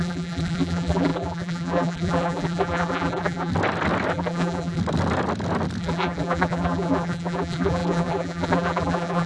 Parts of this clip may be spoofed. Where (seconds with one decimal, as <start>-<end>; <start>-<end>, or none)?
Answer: 0.0-3.5; 4.1-4.8; 5.8-9.3